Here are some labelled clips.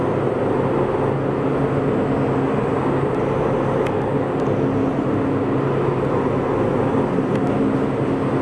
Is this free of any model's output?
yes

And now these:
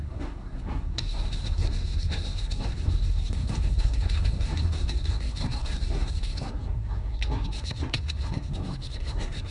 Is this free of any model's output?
no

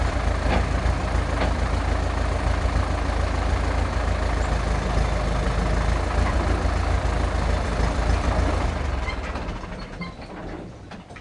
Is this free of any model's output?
yes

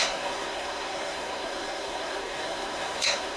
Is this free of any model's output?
no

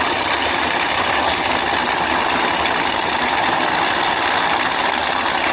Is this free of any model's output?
yes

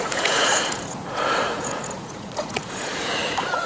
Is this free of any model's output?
no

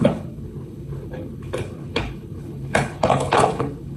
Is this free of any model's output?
no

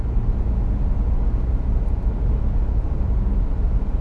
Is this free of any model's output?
yes